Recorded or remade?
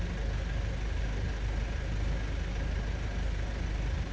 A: recorded